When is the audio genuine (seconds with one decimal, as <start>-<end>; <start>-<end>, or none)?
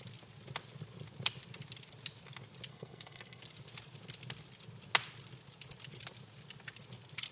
0.0-2.7; 3.4-7.3